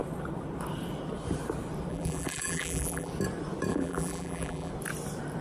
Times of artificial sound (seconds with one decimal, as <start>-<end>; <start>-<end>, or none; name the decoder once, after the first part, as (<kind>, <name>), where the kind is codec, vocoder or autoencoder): 1.9-3.1 (vocoder, BigVGAN v2); 3.7-4.7